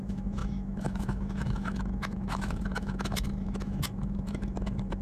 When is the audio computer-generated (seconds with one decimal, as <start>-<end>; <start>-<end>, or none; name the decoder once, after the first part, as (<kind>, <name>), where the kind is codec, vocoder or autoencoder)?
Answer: 0.0-5.0 (autoencoder, DAC-VAE)